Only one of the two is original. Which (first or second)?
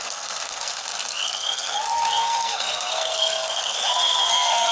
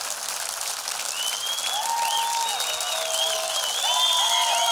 second